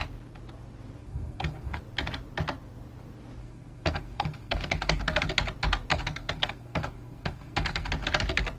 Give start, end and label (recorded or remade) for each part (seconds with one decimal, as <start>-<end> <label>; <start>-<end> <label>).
0.0-1.0 recorded; 1.0-1.8 remade; 1.8-3.4 recorded; 3.4-5.3 remade; 5.3-5.9 recorded; 5.9-7.9 remade; 7.9-8.6 recorded